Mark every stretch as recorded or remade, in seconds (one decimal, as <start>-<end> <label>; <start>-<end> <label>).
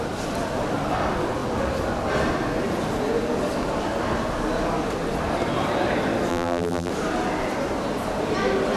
0.0-6.3 recorded; 6.3-6.9 remade; 6.9-8.8 recorded